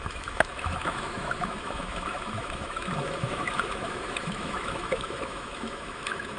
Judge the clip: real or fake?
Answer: fake